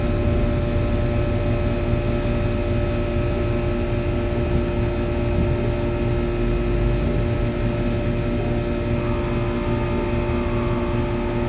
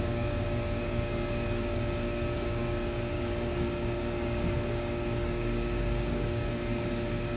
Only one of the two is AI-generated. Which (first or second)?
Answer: second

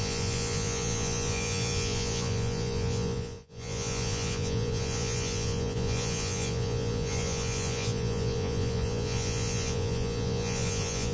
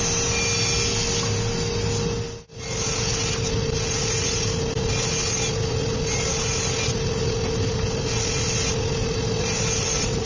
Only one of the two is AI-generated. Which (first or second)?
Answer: first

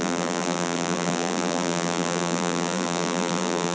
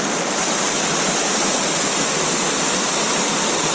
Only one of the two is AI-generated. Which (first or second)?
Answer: first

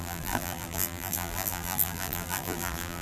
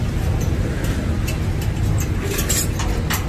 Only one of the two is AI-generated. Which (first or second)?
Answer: first